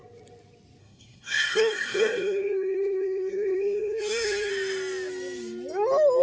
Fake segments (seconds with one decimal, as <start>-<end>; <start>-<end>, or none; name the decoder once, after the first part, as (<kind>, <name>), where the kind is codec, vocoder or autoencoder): 0.8-4.5 (codec, SNAC)